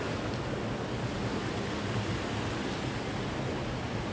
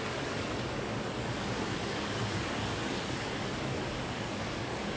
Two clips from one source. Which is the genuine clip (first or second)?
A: first